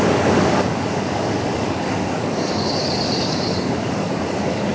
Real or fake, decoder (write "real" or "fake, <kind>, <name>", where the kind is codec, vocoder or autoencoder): fake, codec, DAC